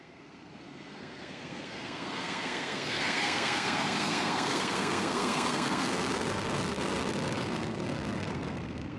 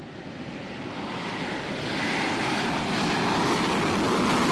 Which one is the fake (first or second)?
first